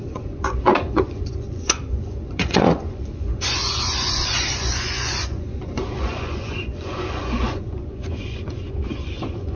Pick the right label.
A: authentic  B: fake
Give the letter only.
B